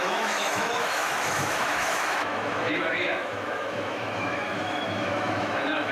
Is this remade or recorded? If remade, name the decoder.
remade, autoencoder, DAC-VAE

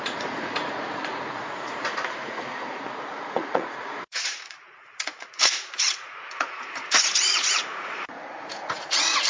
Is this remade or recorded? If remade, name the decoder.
remade, vocoder, Vocos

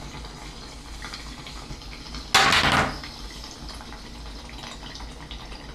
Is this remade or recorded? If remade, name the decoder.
recorded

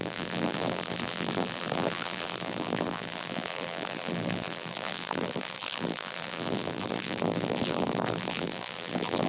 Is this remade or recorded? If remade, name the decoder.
remade, vocoder, BigVGAN v2